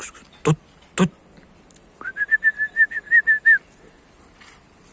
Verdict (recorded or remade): recorded